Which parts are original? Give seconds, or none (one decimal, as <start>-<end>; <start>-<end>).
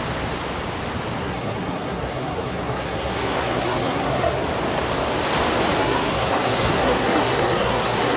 0.0-1.2; 4.4-5.8